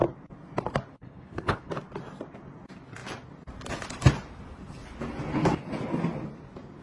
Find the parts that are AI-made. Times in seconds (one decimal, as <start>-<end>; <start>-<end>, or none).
0.9-1.7